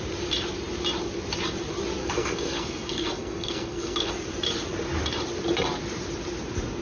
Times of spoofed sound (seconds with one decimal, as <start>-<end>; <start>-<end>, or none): 2.0-4.1